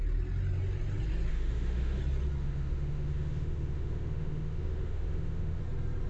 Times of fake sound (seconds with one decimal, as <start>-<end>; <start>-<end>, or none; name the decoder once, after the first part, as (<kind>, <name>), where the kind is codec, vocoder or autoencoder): 1.3-2.0 (autoencoder, DAC-VAE); 2.4-5.6

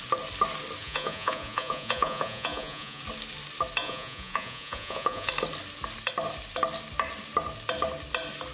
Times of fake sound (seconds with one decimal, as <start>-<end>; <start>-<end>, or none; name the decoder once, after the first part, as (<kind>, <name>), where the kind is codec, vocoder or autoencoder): 0.8-3.0 (vocoder, Vocos); 3.8-5.3

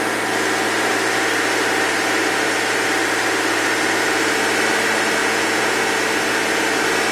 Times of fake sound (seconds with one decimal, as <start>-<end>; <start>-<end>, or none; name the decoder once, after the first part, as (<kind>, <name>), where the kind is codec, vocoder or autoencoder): 5.2-5.8 (vocoder, Vocos)